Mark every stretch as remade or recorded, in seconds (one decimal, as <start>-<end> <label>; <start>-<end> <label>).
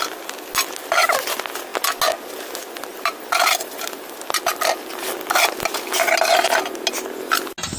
0.0-7.8 recorded